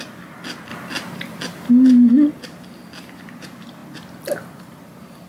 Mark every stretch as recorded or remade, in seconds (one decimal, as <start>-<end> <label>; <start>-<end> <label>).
0.0-5.3 recorded